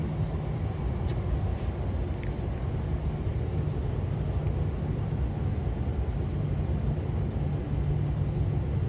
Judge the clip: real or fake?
real